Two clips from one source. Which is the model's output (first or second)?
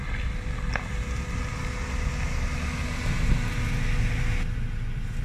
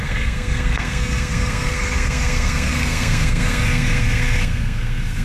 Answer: second